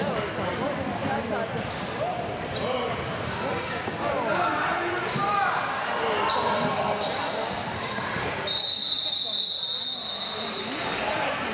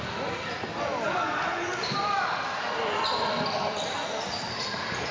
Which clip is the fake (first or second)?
second